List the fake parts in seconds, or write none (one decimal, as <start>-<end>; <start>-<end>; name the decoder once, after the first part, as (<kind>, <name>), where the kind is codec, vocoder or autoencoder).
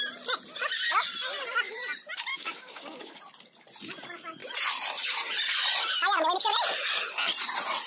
2.3-3.2 (codec, DAC)